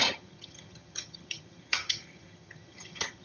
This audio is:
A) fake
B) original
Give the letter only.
A